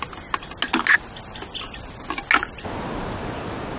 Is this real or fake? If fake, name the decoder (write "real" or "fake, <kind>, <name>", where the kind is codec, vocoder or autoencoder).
real